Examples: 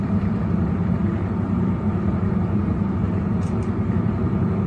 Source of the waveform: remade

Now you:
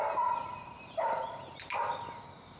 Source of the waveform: recorded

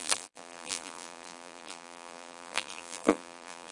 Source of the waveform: remade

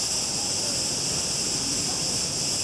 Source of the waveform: remade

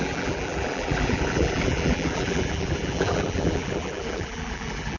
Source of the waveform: remade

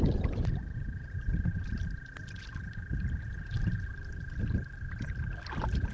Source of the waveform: recorded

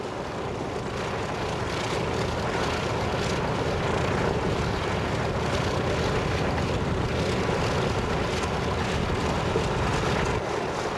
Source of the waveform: recorded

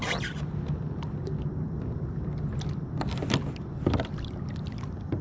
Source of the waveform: remade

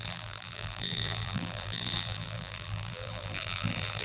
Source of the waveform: remade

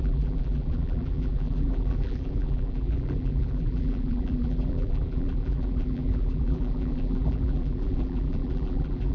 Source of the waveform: remade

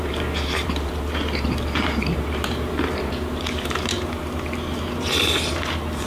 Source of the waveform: remade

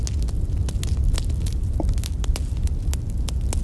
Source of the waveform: recorded